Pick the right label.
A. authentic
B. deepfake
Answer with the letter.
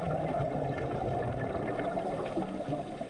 A